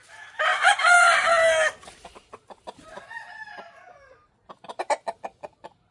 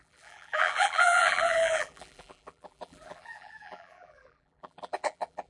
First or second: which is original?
first